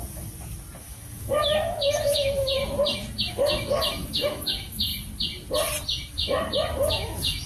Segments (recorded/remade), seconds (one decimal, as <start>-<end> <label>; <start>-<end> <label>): 0.0-0.8 recorded; 0.8-2.6 remade; 2.6-3.3 recorded; 3.3-4.9 remade; 4.9-6.1 recorded; 6.1-7.5 remade